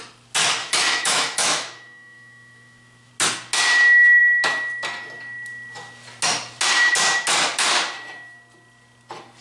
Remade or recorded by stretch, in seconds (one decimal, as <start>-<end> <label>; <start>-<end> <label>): 0.0-0.6 recorded; 0.6-3.1 remade; 3.1-9.4 recorded